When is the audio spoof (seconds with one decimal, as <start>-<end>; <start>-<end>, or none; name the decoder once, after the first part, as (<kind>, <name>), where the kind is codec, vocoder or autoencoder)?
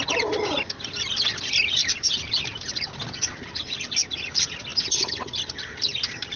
none